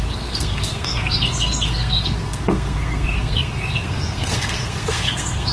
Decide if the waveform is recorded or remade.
remade